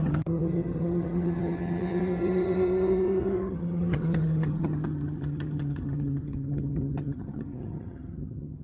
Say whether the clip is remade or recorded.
remade